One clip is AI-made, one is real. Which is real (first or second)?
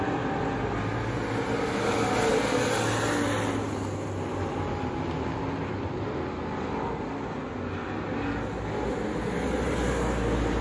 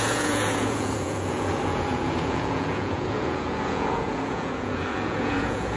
first